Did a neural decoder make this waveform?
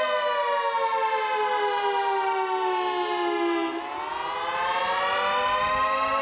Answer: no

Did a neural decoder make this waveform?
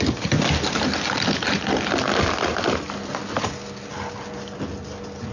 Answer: no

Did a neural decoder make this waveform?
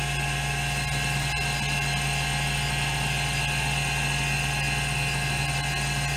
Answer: no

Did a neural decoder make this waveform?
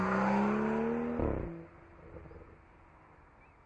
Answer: no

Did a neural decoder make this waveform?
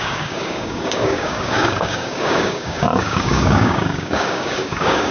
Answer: yes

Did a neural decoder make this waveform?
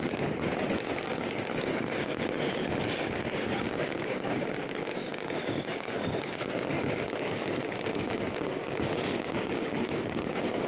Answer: yes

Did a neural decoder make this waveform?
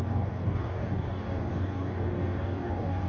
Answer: yes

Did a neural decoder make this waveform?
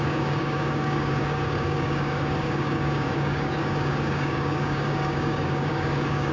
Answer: yes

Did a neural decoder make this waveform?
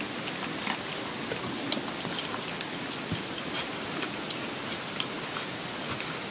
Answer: no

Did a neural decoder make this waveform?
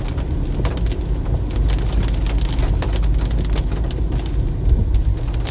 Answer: no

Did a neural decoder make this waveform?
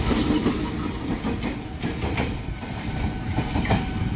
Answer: no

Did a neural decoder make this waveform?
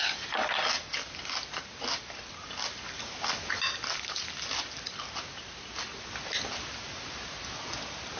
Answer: no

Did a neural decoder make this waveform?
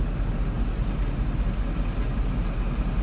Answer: no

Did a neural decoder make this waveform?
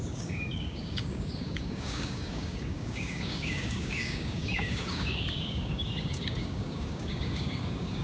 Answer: yes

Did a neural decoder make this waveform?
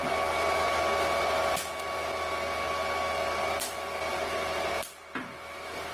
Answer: no